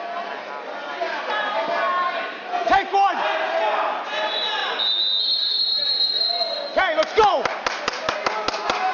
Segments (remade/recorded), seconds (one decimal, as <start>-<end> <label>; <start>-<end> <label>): 0.0-8.9 recorded